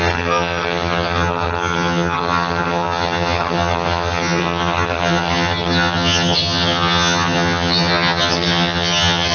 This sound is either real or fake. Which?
fake